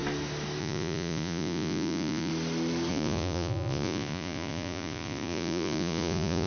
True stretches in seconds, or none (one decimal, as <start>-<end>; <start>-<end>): 0.0-0.6; 2.3-2.9